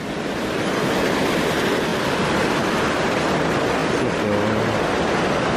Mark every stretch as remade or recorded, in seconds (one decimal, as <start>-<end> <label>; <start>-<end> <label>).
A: 0.0-5.6 recorded